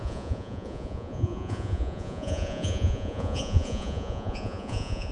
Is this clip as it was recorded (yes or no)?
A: no